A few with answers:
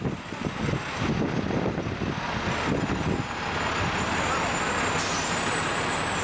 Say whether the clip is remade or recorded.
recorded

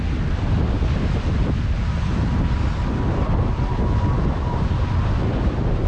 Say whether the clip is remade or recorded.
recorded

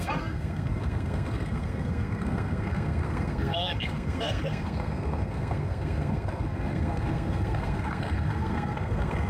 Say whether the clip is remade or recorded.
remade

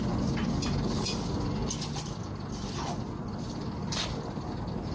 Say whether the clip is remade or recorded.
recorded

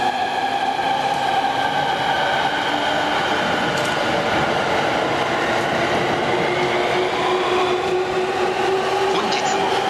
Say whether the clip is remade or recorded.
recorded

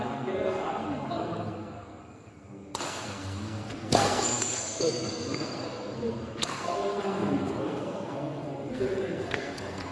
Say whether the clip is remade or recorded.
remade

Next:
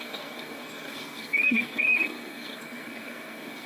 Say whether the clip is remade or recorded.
remade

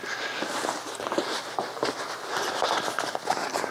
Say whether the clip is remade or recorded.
recorded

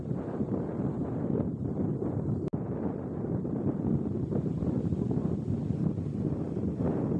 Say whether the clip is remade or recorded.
recorded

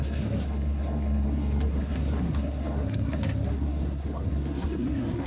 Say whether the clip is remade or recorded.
remade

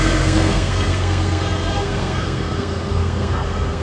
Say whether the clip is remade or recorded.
remade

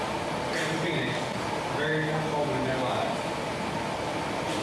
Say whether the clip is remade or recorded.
recorded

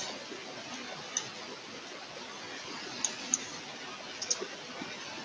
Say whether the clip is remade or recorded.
recorded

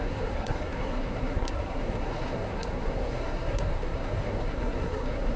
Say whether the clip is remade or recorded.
remade